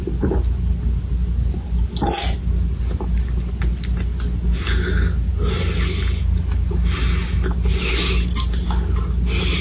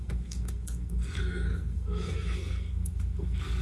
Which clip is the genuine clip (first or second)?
first